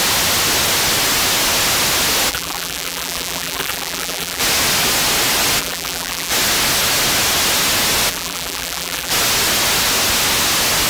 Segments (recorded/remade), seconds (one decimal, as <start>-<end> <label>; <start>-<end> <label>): 0.0-2.3 recorded; 2.3-4.4 remade; 4.4-5.6 recorded; 5.6-6.3 remade; 6.3-8.1 recorded; 8.1-9.1 remade; 9.1-10.9 recorded